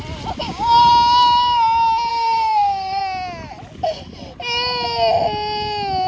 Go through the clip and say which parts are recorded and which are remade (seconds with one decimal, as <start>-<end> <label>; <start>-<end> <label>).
0.0-0.4 recorded; 0.4-0.9 remade; 0.9-2.1 recorded; 2.1-3.0 remade; 3.0-6.1 recorded